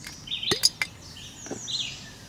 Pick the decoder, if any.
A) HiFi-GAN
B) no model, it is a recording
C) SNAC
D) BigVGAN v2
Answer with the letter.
B